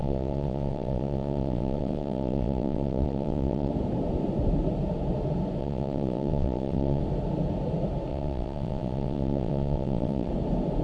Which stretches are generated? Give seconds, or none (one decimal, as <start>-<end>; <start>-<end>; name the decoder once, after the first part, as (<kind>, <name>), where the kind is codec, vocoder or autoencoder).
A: 0.0-3.7 (vocoder, WaveNeXt); 5.6-7.0; 8.1-10.3